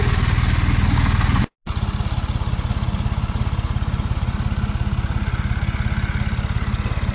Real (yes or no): yes